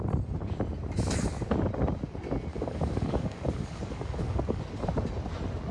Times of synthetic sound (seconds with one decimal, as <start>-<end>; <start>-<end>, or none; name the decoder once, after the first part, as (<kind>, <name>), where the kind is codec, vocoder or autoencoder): 2.5-4.6 (codec, DAC)